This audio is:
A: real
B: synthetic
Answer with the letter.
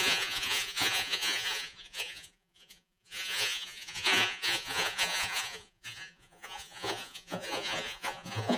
B